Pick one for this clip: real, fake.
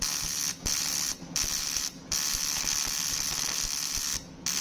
real